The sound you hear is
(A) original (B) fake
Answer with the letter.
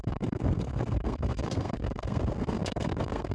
B